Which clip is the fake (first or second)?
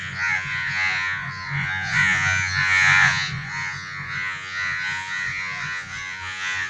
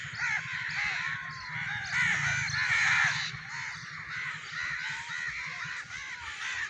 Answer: first